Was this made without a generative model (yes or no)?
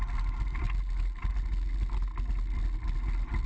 yes